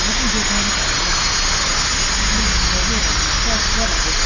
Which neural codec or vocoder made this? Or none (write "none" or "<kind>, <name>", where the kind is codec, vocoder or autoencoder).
none